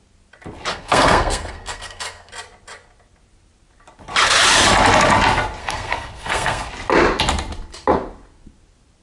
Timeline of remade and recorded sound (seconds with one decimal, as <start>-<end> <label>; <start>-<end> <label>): 0.0-0.7 recorded; 0.7-2.3 remade; 2.3-5.6 recorded; 5.6-6.7 remade; 6.7-9.0 recorded